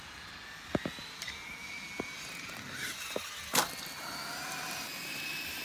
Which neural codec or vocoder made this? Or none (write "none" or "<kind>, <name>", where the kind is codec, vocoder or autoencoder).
none